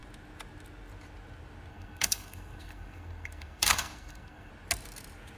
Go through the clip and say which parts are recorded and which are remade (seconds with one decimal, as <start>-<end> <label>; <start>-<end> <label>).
0.0-1.7 recorded; 1.7-4.5 remade; 4.5-5.4 recorded